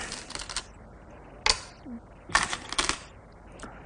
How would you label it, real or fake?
real